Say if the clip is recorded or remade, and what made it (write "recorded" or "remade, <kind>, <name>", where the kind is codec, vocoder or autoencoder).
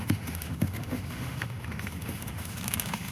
remade, autoencoder, DAC-VAE